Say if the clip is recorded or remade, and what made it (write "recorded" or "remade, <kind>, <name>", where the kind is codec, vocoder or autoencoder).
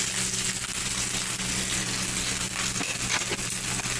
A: recorded